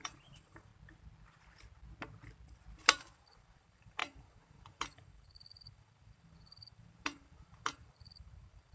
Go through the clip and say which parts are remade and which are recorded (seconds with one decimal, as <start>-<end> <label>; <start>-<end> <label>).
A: 0.0-0.7 remade; 0.7-2.8 recorded; 2.8-8.7 remade